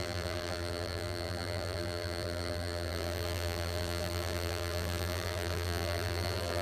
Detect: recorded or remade remade